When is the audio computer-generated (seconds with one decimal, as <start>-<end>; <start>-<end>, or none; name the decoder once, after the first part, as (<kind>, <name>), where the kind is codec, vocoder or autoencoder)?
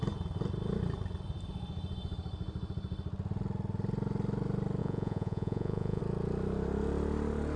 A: 4.8-6.0 (vocoder, Vocos)